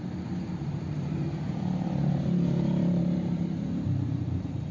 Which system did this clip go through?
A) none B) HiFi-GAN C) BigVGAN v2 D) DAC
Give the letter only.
C